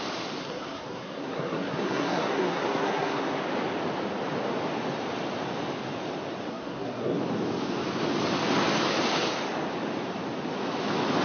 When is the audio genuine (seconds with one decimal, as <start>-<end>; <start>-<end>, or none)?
0.0-0.4; 3.4-6.5; 7.2-11.2